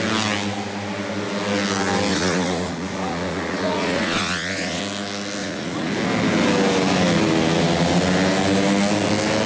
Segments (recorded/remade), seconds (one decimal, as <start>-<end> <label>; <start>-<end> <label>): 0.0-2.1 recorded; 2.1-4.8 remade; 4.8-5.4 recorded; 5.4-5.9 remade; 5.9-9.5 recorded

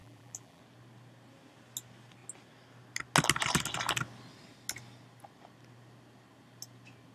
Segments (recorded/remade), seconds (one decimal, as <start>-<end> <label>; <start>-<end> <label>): 0.0-0.6 remade; 0.6-7.1 recorded

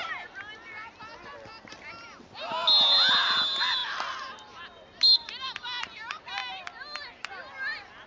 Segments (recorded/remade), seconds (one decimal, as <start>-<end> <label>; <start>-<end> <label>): 0.0-8.1 recorded

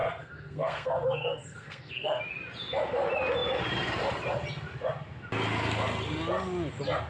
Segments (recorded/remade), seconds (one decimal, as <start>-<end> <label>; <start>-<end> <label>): 0.0-2.2 remade; 2.2-7.1 recorded

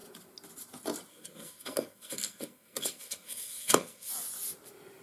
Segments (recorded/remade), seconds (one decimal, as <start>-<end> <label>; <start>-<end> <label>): 0.0-1.1 recorded; 1.1-4.1 remade; 4.1-5.0 recorded

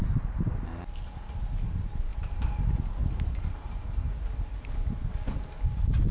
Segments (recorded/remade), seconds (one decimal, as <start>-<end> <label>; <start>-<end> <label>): 0.0-6.1 recorded

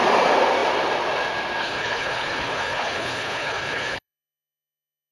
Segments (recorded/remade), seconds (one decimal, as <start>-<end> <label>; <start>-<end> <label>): 0.0-1.6 recorded; 1.6-5.1 remade

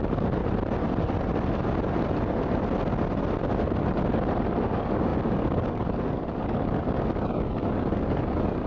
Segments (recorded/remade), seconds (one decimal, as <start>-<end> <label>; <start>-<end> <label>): 0.0-0.4 remade; 0.4-4.5 recorded; 4.5-8.7 remade